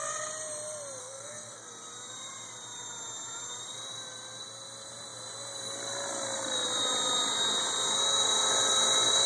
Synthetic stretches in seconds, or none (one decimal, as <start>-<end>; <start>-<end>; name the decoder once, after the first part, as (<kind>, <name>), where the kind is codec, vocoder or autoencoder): 1.0-1.7 (codec, SNAC)

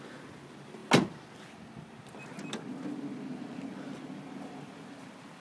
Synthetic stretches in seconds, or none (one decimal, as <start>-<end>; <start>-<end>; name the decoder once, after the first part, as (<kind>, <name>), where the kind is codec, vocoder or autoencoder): none

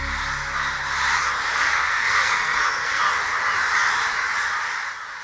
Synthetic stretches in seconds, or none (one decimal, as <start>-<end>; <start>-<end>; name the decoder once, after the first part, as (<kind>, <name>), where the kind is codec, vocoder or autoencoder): 1.5-3.0 (codec, SNAC)

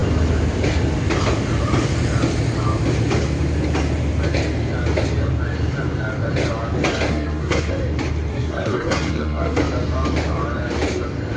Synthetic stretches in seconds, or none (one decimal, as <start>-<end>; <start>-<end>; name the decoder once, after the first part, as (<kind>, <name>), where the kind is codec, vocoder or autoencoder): 7.1-7.7 (codec, SNAC); 8.3-9.6